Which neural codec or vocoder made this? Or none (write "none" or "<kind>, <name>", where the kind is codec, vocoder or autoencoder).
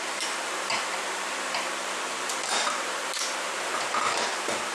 vocoder, BigVGAN v2